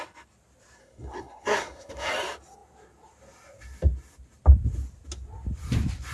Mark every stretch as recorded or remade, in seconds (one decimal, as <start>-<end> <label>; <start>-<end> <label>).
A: 0.0-0.8 recorded; 0.8-2.1 remade; 2.1-6.1 recorded